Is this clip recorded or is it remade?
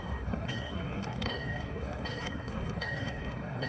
remade